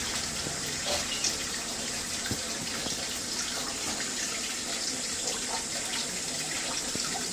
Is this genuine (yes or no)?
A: yes